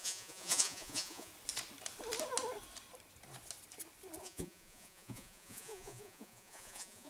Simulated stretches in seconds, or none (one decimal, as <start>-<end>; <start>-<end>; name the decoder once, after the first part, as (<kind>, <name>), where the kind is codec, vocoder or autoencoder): 0.0-1.3 (vocoder, Vocos); 4.2-7.1